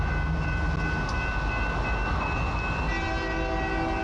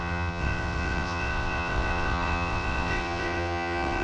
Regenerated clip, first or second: second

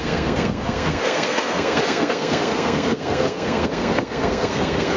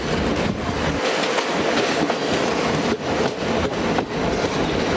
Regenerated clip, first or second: first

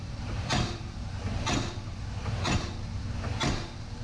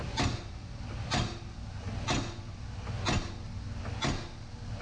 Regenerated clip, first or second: first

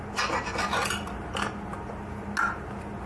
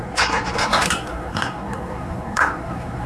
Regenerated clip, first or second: second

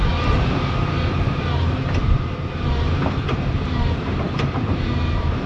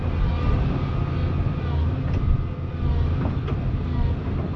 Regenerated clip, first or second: first